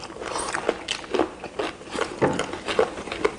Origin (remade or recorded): recorded